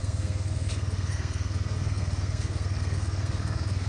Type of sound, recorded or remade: remade